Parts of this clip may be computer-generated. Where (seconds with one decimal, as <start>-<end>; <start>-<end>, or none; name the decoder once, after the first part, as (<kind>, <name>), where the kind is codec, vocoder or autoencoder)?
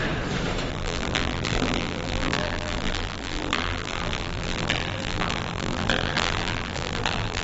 0.7-7.4 (vocoder, BigVGAN v2)